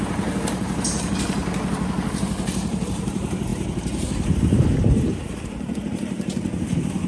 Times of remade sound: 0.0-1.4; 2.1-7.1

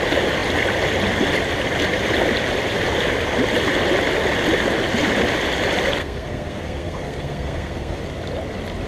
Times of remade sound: 6.0-8.0

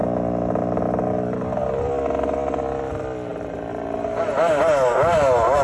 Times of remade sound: 3.3-4.3

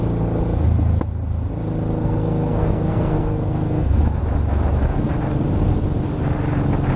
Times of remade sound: 2.0-4.2